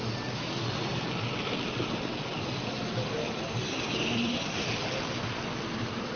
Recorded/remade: recorded